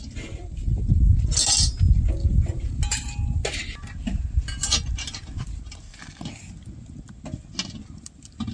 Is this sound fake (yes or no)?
no